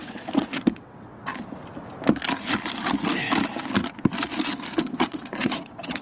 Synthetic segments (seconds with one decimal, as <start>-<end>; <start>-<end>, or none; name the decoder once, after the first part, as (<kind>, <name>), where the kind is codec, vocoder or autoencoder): 0.0-1.3 (vocoder, WaveNeXt); 4.9-6.0